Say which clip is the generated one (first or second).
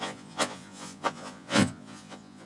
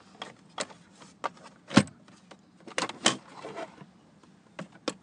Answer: first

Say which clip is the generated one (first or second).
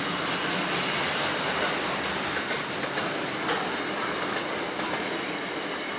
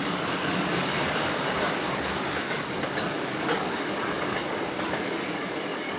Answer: second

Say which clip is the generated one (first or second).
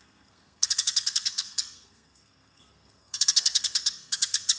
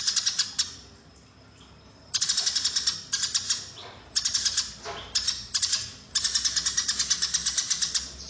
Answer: first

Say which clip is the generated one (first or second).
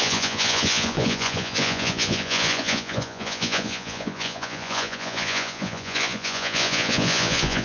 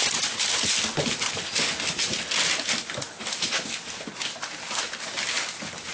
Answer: first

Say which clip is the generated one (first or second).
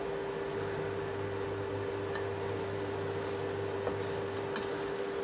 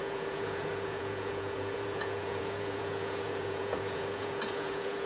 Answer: second